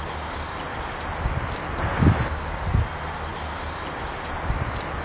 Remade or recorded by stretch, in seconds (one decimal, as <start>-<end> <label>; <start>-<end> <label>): 0.0-5.0 recorded